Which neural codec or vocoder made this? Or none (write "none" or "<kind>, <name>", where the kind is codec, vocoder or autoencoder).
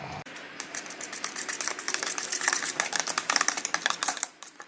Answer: vocoder, BigVGAN v2